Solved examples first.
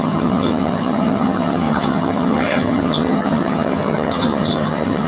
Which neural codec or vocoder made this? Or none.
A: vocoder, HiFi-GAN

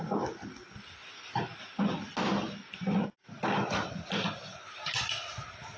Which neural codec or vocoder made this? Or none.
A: none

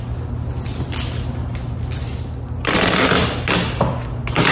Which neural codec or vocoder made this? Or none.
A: none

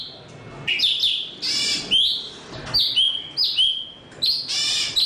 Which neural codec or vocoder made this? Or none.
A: none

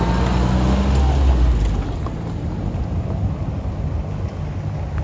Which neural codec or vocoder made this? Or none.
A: none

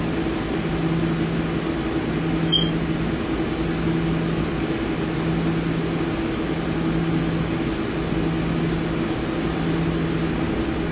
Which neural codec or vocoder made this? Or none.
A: none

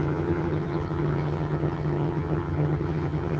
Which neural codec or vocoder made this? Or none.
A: vocoder, HiFi-GAN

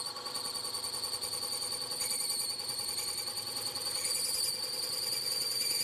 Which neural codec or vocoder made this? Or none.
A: none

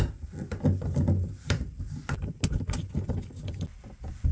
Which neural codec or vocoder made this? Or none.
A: none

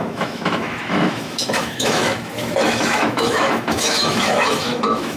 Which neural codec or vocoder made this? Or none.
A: autoencoder, DAC-VAE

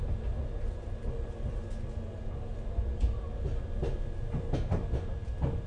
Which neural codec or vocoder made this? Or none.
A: none